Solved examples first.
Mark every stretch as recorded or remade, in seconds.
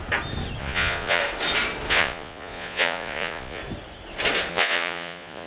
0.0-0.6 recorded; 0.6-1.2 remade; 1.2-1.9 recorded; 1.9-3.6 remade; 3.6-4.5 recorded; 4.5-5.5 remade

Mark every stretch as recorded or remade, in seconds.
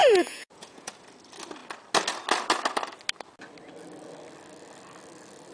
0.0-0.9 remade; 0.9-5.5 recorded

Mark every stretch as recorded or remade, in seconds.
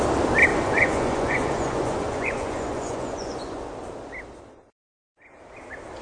0.0-0.5 recorded; 0.5-3.6 remade; 3.6-6.0 recorded